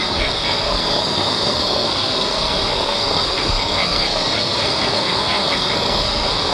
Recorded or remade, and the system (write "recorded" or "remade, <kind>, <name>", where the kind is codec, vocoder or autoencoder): remade, codec, SNAC